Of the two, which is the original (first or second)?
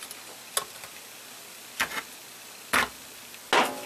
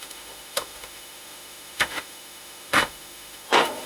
first